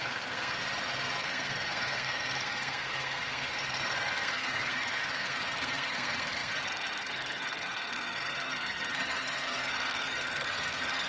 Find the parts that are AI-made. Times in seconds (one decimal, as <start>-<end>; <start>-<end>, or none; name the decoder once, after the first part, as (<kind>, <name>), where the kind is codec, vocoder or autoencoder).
0.0-0.6 (codec, SNAC); 1.2-11.1